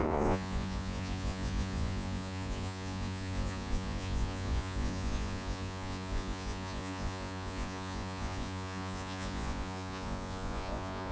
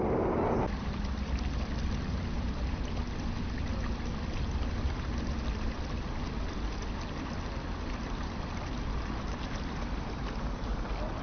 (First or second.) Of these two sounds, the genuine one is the second